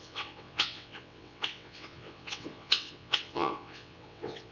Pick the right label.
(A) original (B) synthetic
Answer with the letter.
B